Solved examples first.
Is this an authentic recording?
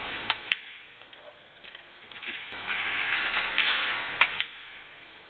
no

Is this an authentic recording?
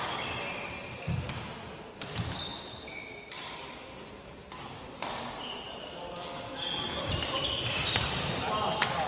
yes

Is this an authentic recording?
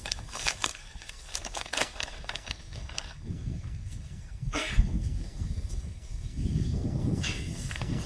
no